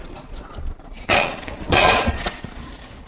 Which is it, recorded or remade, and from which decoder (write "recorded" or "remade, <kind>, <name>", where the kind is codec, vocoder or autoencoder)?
remade, vocoder, Vocos